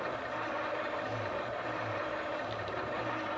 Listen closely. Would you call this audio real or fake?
real